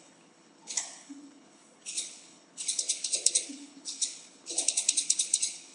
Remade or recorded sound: remade